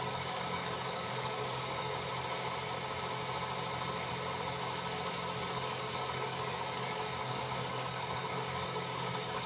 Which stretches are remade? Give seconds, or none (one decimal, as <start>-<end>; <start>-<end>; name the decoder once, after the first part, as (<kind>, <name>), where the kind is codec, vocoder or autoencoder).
0.0-1.9 (codec, DAC); 5.4-9.5

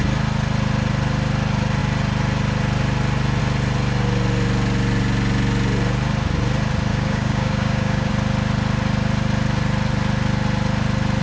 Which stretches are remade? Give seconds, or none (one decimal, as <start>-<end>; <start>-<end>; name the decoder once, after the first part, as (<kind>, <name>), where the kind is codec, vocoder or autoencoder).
6.9-8.1 (codec, DAC)

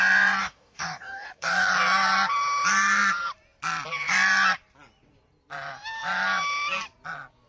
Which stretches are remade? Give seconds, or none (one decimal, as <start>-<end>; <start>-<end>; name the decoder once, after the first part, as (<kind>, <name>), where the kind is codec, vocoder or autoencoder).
0.4-1.7 (codec, DAC)

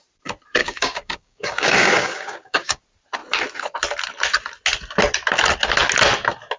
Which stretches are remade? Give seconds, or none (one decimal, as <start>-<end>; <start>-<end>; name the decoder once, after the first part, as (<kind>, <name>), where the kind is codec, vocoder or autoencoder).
0.6-2.8 (codec, DAC)

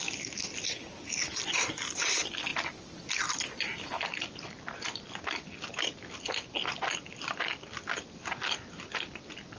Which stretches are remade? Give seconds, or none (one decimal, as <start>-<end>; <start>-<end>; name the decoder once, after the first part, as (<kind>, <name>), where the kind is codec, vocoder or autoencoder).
none

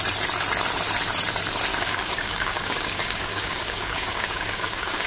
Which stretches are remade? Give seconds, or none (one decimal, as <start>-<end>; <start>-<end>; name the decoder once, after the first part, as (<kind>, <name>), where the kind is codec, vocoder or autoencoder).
1.7-5.1 (codec, DAC)

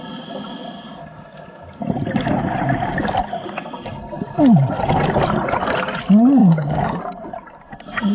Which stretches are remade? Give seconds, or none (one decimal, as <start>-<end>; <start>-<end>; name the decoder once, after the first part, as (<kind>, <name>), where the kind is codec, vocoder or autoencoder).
6.4-7.0 (codec, DAC)